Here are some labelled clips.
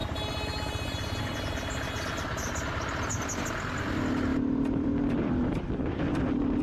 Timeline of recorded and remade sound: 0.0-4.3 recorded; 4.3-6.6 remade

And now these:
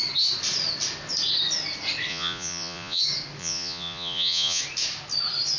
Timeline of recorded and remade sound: 0.0-2.1 recorded; 2.1-3.0 remade; 3.0-3.4 recorded; 3.4-4.6 remade; 4.6-5.6 recorded

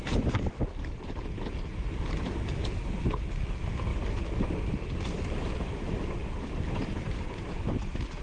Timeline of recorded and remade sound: 0.0-8.2 recorded